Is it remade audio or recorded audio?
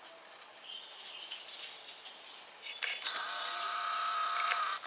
recorded